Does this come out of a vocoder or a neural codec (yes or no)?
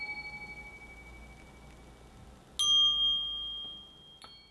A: no